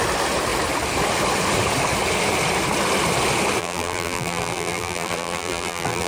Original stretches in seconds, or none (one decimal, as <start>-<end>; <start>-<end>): 0.0-3.6